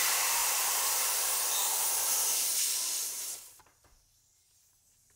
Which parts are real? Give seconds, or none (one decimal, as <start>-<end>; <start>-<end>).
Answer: none